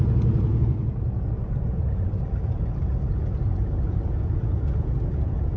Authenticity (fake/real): fake